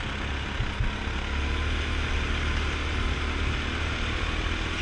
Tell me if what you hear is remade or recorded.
recorded